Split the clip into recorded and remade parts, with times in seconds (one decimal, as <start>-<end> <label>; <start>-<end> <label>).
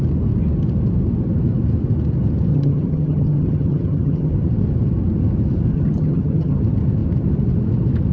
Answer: 0.0-2.5 recorded; 2.5-4.3 remade; 4.3-5.7 recorded; 5.7-6.6 remade; 6.6-8.1 recorded